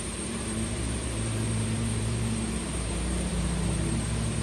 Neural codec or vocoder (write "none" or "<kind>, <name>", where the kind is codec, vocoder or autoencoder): vocoder, BigVGAN v2